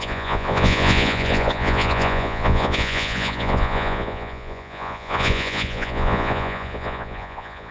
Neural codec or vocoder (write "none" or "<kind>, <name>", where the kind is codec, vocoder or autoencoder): vocoder, Vocos